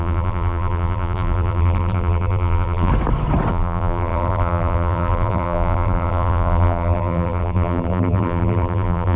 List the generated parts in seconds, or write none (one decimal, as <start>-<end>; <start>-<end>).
0.0-2.9; 3.5-9.2